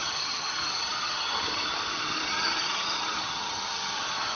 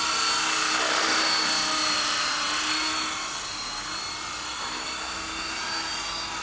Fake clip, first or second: first